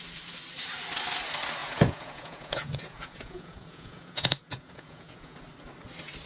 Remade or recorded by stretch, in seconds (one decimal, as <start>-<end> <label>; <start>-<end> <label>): 0.0-1.6 recorded; 1.6-5.4 remade; 5.4-6.3 recorded